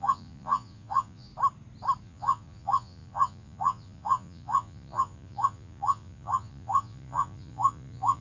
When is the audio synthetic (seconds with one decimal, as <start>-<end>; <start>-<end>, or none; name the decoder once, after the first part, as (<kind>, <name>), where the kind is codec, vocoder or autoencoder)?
0.0-1.3 (vocoder, Vocos); 2.0-8.2